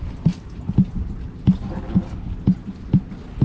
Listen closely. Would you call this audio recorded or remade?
recorded